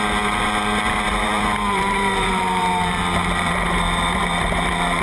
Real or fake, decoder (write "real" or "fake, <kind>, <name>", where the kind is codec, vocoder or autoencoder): fake, vocoder, BigVGAN v2